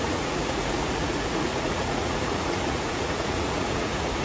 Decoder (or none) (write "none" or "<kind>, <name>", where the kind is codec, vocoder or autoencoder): vocoder, Vocos